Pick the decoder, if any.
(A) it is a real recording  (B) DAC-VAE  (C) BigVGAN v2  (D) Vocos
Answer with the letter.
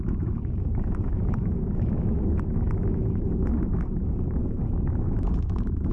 B